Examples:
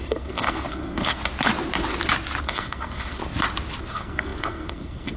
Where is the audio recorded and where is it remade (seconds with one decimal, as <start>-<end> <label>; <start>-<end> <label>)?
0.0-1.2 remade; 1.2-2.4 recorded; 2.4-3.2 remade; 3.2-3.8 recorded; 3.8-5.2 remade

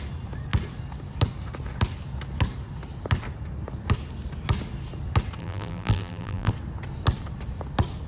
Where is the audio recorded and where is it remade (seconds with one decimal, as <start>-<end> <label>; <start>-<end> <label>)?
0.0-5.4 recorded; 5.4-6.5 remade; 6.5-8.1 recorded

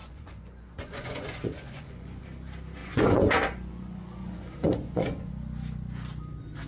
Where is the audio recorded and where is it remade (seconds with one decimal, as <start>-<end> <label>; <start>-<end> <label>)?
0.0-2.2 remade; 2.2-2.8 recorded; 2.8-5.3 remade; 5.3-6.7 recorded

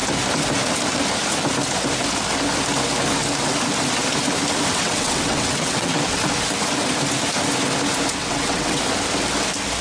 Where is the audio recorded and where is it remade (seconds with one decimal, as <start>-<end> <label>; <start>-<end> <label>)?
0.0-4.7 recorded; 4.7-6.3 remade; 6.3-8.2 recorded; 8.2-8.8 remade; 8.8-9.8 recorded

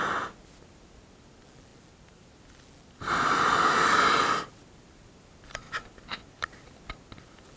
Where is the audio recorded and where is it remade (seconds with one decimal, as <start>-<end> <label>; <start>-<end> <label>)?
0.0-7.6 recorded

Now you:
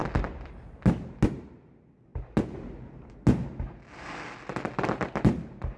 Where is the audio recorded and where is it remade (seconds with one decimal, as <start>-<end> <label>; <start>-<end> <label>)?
0.0-5.8 recorded